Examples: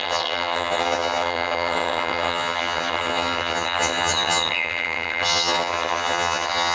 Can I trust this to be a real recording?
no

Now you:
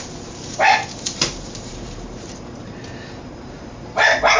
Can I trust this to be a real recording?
no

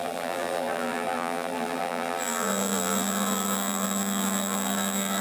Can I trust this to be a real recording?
no